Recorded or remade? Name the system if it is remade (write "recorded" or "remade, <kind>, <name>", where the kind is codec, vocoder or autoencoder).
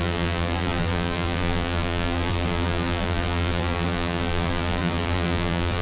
remade, vocoder, BigVGAN v2